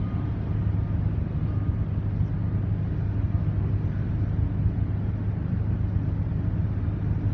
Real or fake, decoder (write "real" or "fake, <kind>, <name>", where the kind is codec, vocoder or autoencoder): real